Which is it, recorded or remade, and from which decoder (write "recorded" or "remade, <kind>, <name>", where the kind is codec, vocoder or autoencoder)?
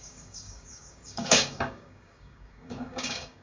remade, codec, DAC